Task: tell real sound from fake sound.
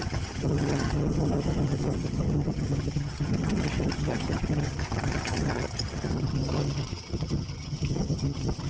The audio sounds fake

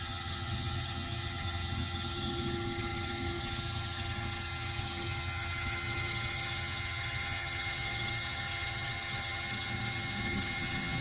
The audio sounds fake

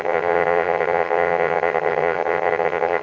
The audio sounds fake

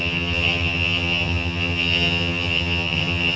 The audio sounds fake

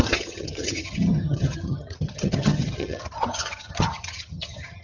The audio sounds fake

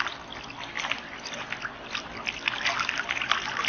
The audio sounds real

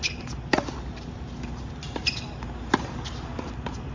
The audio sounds real